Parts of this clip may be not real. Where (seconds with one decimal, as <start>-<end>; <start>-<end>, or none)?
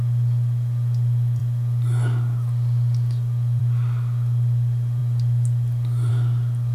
none